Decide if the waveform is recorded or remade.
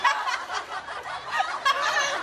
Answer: recorded